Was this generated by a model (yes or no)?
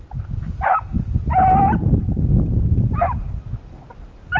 no